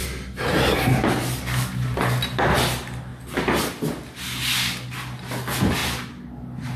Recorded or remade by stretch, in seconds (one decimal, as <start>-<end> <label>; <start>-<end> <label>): 0.0-6.8 recorded